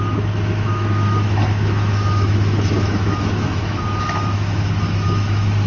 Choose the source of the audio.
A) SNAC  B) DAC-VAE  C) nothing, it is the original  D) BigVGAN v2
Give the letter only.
B